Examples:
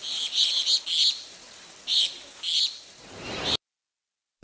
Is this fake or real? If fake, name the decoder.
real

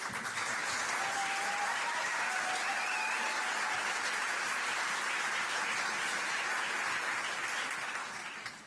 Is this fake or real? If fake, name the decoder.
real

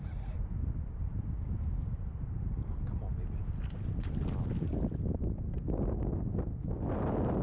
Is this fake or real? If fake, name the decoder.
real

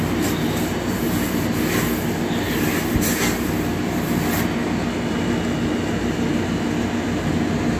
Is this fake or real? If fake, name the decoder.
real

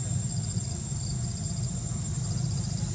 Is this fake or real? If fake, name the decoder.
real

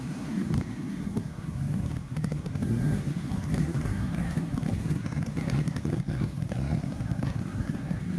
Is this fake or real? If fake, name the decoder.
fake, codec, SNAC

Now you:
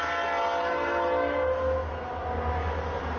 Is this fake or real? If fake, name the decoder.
real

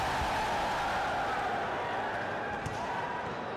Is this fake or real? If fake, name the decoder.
real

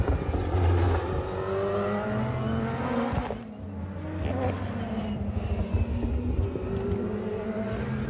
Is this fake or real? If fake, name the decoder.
real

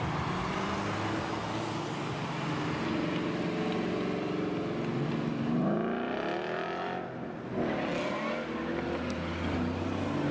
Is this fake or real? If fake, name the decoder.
real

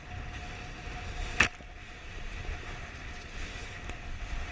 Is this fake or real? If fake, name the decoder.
real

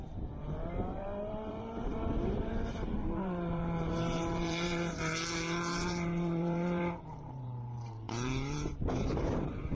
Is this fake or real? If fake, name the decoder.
fake, vocoder, BigVGAN v2